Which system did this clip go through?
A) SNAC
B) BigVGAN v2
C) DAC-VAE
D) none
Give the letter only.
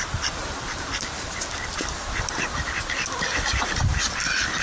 B